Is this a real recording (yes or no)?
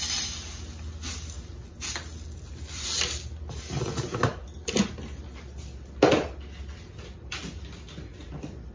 yes